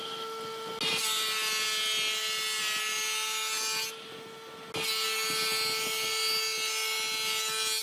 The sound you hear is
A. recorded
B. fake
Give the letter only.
A